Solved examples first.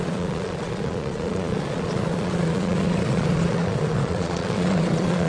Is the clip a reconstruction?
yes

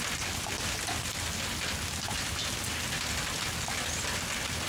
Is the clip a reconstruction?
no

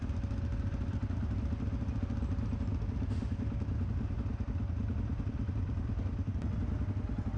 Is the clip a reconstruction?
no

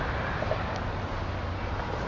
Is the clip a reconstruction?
no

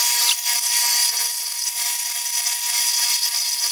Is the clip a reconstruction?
no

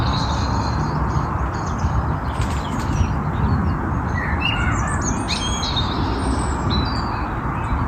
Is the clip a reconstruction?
no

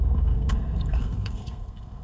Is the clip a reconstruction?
yes